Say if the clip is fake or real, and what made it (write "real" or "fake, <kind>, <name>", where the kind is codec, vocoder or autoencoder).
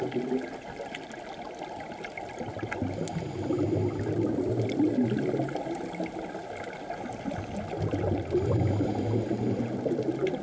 real